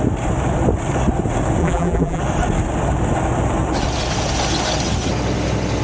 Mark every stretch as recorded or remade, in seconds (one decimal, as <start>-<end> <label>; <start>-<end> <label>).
0.0-1.6 recorded; 1.6-2.2 remade; 2.2-5.8 recorded